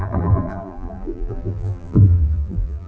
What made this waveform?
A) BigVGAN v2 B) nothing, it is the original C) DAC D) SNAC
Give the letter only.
A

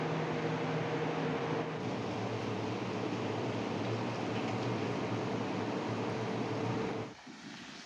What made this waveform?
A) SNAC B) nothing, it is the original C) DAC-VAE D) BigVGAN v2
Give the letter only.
B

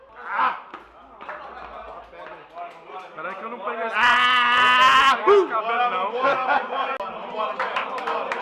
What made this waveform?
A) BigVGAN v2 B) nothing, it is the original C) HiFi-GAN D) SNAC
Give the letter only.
B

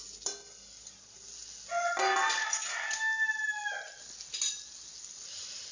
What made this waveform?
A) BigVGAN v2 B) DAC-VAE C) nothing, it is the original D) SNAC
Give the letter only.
C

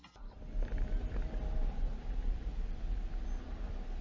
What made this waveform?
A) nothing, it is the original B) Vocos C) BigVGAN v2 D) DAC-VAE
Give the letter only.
C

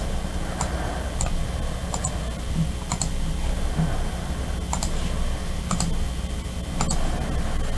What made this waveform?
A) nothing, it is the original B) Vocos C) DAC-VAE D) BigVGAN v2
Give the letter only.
A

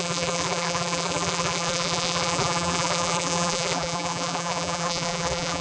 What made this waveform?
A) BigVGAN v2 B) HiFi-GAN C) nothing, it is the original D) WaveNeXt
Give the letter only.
A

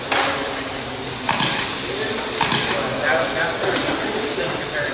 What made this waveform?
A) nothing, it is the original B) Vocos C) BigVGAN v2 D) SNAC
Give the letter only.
A